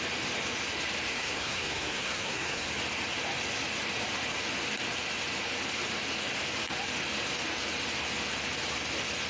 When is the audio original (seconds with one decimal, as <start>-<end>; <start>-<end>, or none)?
0.0-1.1; 2.7-9.3